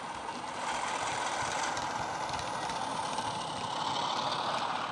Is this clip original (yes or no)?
yes